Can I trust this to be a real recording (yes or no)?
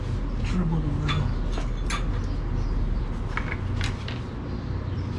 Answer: yes